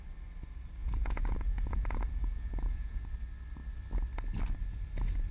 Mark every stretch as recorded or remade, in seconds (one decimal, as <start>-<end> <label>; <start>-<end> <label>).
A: 0.0-0.8 recorded; 0.8-3.0 remade; 3.0-5.3 recorded